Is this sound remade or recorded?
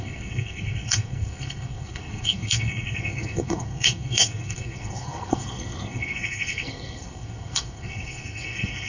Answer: remade